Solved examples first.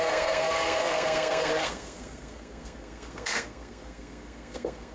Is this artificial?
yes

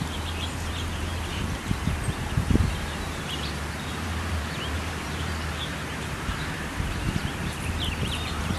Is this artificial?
yes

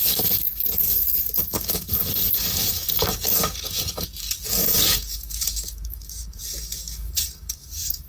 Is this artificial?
yes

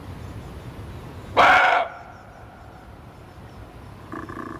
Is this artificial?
no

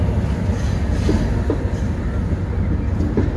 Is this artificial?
no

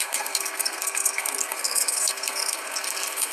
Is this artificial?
yes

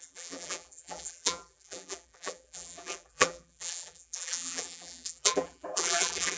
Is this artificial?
yes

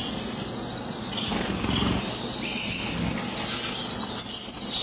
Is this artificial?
no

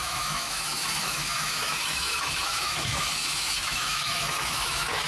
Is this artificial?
yes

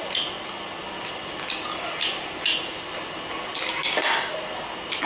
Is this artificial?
no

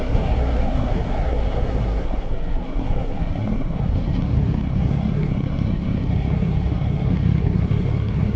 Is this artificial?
yes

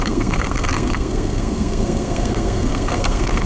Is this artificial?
yes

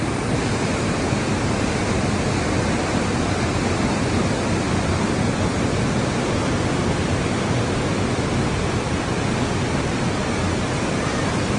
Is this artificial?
no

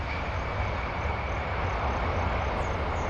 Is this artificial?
no